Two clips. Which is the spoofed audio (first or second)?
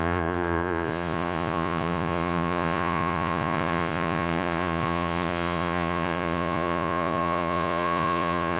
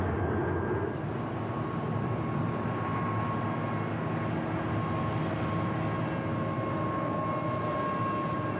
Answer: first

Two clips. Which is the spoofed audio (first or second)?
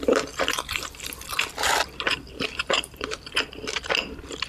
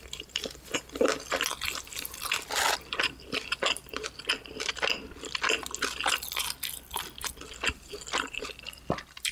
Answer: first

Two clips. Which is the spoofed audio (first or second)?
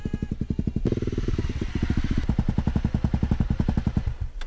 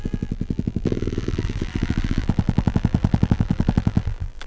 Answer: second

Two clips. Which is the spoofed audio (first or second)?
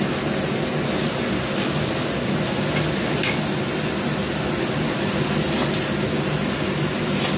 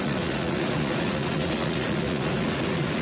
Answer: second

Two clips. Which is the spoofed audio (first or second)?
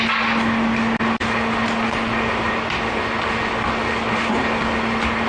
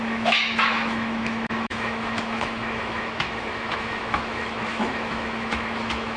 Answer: second